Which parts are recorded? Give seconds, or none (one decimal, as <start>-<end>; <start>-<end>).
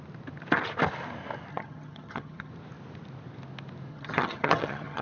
0.0-1.5; 2.5-3.9